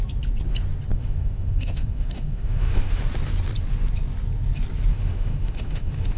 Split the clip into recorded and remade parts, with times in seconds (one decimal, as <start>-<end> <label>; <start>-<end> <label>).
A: 0.0-0.9 recorded; 0.9-3.0 remade; 3.0-4.9 recorded; 4.9-6.2 remade